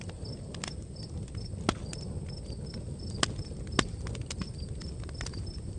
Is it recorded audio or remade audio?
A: recorded